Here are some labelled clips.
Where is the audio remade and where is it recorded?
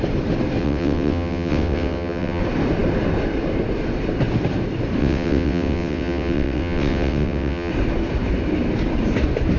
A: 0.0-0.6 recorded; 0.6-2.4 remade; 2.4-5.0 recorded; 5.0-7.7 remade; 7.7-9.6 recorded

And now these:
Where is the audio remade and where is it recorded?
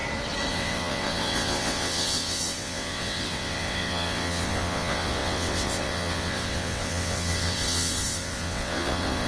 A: 0.0-0.5 recorded; 0.5-9.3 remade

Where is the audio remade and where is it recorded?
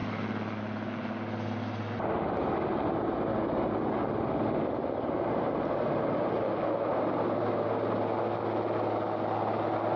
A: 0.0-10.0 recorded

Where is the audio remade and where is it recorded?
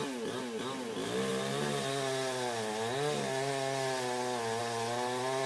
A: 0.0-5.5 recorded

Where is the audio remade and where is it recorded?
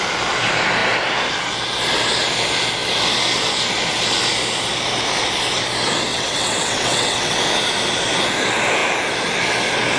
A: 0.0-6.1 recorded; 6.1-7.4 remade; 7.4-10.0 recorded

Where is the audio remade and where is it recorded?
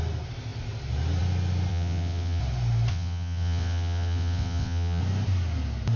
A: 0.0-1.7 recorded; 1.7-2.4 remade; 2.4-2.9 recorded; 2.9-5.0 remade; 5.0-6.0 recorded